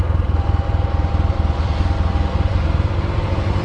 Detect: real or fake fake